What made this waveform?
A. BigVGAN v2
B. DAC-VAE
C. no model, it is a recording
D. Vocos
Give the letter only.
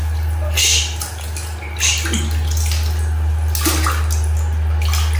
C